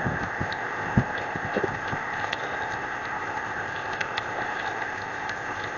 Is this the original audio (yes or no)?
no